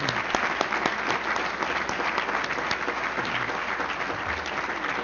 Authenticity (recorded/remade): recorded